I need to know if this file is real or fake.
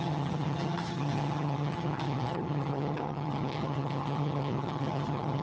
fake